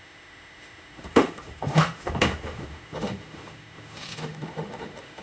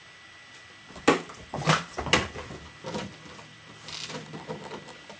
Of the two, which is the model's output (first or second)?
first